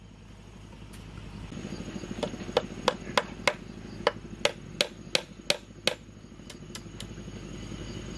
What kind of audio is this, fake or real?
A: real